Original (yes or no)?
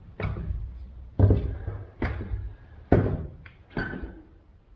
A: yes